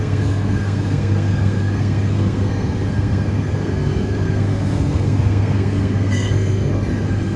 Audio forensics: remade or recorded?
remade